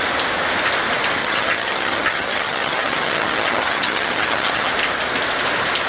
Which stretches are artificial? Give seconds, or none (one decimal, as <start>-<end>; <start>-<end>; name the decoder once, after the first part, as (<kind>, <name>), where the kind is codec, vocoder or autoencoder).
1.2-4.7 (vocoder, HiFi-GAN)